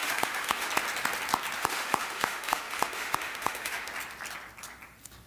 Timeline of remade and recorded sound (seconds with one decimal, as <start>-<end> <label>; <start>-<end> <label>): 0.0-0.7 remade; 0.7-1.6 recorded; 1.6-3.9 remade; 3.9-5.3 recorded